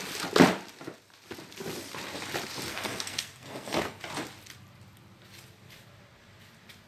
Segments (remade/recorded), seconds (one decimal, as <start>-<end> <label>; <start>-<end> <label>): 0.0-2.7 recorded; 2.7-4.0 remade; 4.0-6.9 recorded